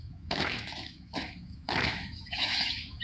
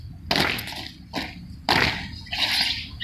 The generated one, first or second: first